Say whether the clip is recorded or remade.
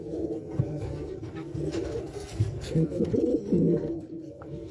remade